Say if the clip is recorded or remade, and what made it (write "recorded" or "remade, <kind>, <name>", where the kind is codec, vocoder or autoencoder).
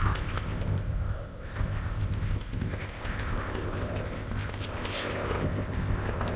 remade, codec, ZipCodec